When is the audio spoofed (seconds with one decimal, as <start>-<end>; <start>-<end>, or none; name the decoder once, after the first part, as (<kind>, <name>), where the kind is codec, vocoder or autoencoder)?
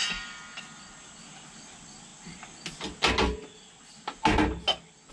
none